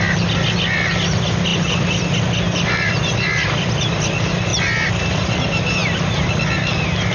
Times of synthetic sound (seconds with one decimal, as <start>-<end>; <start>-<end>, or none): none